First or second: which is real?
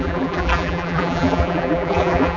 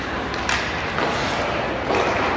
second